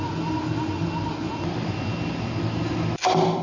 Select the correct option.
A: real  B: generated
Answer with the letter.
A